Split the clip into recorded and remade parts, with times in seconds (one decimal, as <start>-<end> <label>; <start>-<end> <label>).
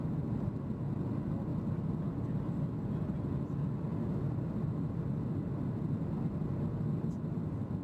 0.0-7.8 recorded